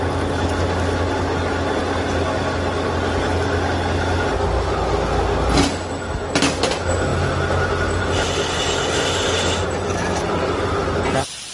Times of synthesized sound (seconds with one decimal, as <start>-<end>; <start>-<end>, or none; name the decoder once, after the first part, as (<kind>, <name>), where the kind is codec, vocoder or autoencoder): none